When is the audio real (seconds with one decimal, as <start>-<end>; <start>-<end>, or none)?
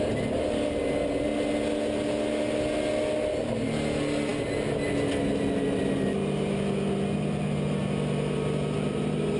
0.0-9.4